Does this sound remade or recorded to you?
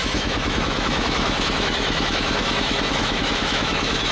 remade